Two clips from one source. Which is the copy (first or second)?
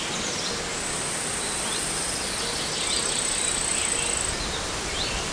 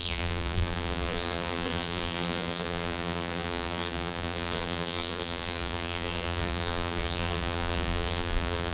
second